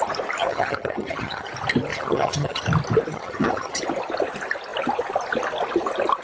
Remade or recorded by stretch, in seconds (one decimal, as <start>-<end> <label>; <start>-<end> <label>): 0.0-0.4 recorded; 0.4-1.5 remade; 1.5-1.9 recorded; 1.9-2.6 remade; 2.6-3.1 recorded; 3.1-3.8 remade; 3.8-6.2 recorded